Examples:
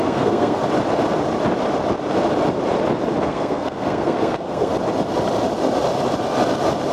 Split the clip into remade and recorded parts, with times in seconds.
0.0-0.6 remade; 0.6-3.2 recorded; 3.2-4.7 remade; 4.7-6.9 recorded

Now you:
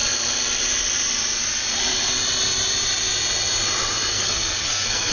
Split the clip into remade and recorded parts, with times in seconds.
0.0-4.1 recorded; 4.1-5.1 remade

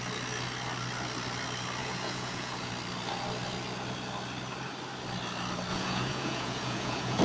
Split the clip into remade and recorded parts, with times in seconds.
0.0-1.8 recorded; 1.8-2.7 remade; 2.7-5.7 recorded; 5.7-7.2 remade

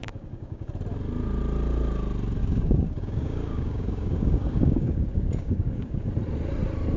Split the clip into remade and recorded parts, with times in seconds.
0.0-0.7 remade; 0.7-2.4 recorded; 2.4-6.1 remade; 6.1-7.0 recorded

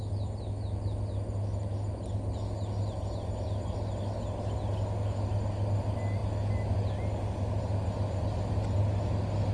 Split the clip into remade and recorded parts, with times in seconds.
0.0-9.5 recorded

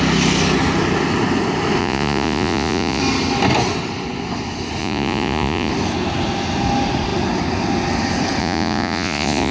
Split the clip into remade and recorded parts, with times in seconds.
0.0-1.8 recorded; 1.8-3.0 remade; 3.0-4.8 recorded; 4.8-5.7 remade; 5.7-8.4 recorded; 8.4-9.5 remade

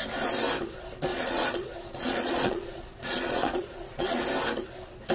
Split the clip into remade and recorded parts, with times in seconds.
0.0-1.1 recorded; 1.1-4.2 remade; 4.2-5.1 recorded